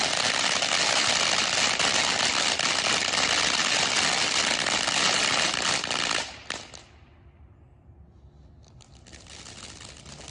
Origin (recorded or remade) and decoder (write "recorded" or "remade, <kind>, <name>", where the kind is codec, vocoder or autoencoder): recorded